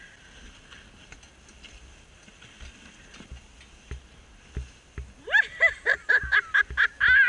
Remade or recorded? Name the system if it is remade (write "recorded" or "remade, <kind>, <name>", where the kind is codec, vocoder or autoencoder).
recorded